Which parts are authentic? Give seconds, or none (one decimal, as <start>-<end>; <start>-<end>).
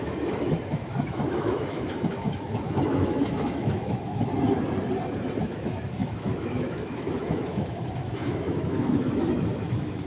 4.3-5.4